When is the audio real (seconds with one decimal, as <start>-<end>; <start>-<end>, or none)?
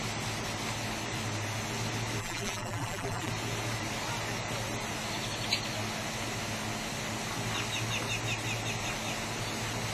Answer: 0.0-2.2; 3.3-9.9